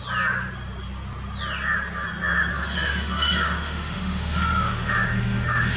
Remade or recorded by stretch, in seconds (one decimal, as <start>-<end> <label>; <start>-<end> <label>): 0.0-2.5 recorded; 2.5-5.8 remade